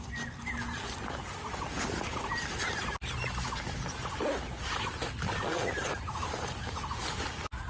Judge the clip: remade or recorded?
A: recorded